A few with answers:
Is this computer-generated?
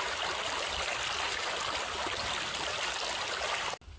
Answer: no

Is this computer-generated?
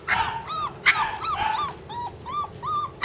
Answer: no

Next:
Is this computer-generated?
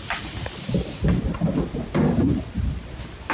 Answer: no